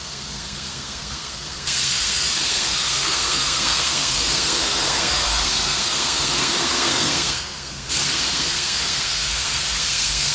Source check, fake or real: fake